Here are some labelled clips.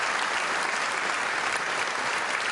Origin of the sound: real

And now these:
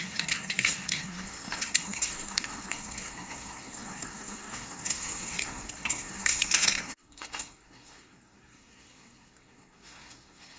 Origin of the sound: fake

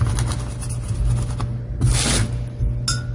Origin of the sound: real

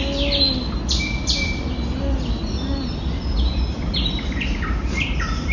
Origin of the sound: real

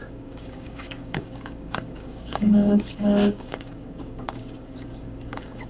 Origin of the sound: fake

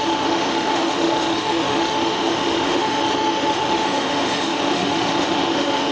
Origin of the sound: fake